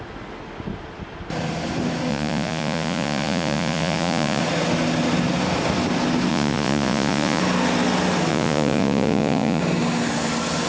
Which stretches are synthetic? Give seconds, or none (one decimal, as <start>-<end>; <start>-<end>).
2.1-4.4; 6.3-7.4; 8.3-9.6